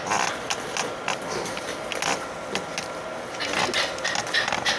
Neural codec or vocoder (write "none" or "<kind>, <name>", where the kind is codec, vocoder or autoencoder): none